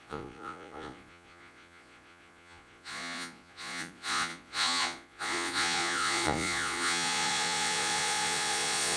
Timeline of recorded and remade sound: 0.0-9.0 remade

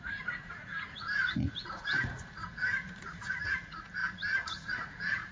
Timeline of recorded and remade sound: 0.0-5.3 remade

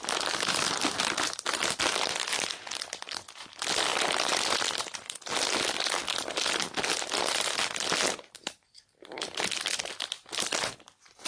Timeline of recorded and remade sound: 0.0-11.3 recorded

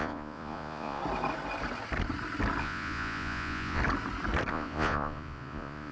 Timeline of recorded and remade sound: 0.0-1.0 remade; 1.0-2.6 recorded; 2.6-3.8 remade; 3.8-4.5 recorded; 4.5-5.9 remade

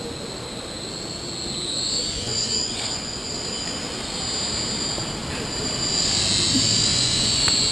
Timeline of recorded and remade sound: 0.0-1.6 recorded; 1.6-3.3 remade; 3.3-6.9 recorded; 6.9-7.7 remade

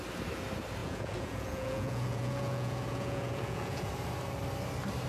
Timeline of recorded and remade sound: 0.0-0.8 recorded; 0.8-3.9 remade; 3.9-5.1 recorded

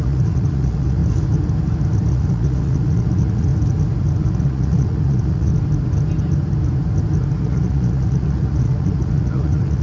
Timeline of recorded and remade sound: 0.0-1.0 remade; 1.0-2.1 recorded; 2.1-3.5 remade; 3.5-4.2 recorded; 4.2-5.5 remade; 5.5-7.4 recorded; 7.4-9.8 remade

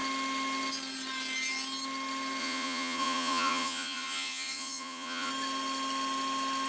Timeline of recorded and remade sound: 0.0-2.4 recorded; 2.4-5.3 remade; 5.3-6.7 recorded